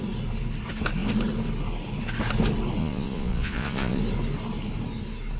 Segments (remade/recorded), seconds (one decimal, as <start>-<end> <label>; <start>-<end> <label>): 0.0-2.8 recorded; 2.8-4.0 remade; 4.0-5.4 recorded